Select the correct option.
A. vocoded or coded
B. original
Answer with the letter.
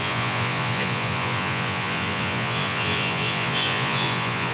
A